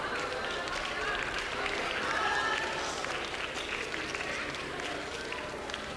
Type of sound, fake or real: real